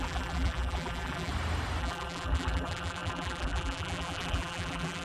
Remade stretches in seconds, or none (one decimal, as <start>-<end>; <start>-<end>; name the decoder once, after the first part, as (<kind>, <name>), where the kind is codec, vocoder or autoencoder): 0.0-1.3 (vocoder, BigVGAN v2); 1.8-5.0